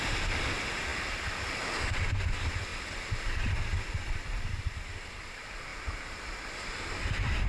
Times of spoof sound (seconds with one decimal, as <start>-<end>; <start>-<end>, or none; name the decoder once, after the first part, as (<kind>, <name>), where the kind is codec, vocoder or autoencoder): none